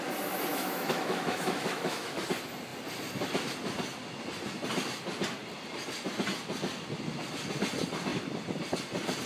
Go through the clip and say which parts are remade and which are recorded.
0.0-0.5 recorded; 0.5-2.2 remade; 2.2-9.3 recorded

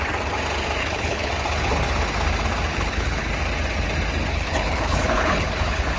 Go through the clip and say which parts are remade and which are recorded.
0.0-0.8 recorded; 0.8-1.3 remade; 1.3-2.7 recorded; 2.7-3.3 remade; 3.3-4.3 recorded; 4.3-6.0 remade

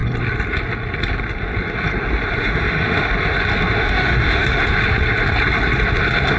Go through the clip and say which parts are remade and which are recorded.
0.0-2.4 recorded; 2.4-3.1 remade; 3.1-3.8 recorded; 3.8-4.7 remade; 4.7-6.4 recorded

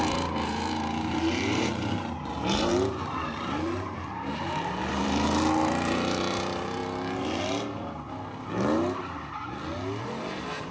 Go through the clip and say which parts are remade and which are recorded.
0.0-2.7 remade; 2.7-3.3 recorded; 3.3-6.8 remade; 6.8-10.0 recorded; 10.0-10.7 remade

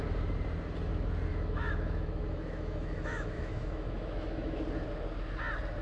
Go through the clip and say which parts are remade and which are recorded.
0.0-1.3 recorded; 1.3-4.6 remade; 4.6-5.8 recorded

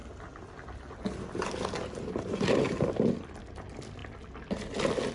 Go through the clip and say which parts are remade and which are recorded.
0.0-5.1 recorded